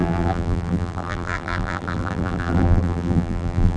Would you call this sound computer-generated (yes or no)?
yes